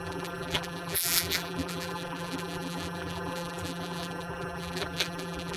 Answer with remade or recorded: remade